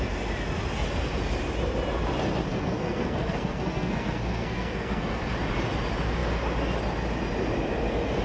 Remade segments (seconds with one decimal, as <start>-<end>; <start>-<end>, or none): 2.5-5.2